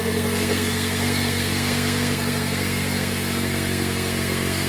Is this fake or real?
fake